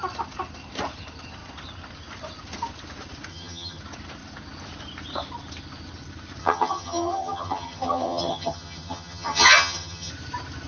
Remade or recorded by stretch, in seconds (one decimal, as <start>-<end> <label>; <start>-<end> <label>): 0.0-3.3 recorded; 3.3-3.8 remade; 3.8-6.4 recorded; 6.4-10.1 remade; 10.1-10.7 recorded